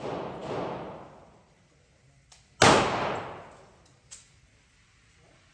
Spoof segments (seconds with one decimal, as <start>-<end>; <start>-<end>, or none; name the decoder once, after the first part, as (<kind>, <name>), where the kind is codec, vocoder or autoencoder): none